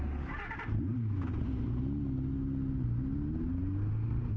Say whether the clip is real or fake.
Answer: real